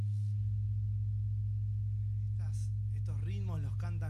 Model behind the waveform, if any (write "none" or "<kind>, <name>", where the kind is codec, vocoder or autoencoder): none